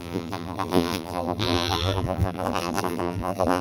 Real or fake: fake